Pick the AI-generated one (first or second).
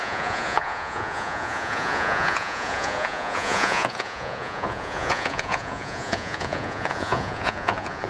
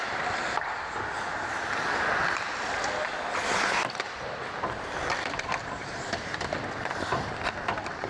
first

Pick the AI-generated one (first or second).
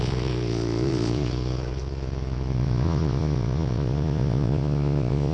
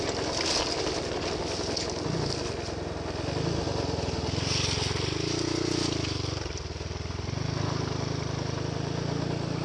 first